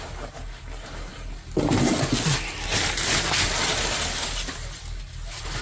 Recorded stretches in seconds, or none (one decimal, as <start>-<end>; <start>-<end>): 0.0-5.6